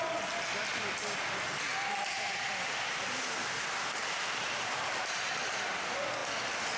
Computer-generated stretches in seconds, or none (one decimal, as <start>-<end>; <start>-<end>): 4.0-5.3